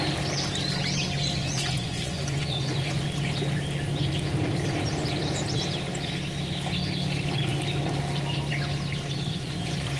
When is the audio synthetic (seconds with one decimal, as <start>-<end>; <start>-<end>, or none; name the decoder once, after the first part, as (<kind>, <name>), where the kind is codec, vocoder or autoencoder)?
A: 1.4-3.0 (vocoder, Vocos); 9.3-10.0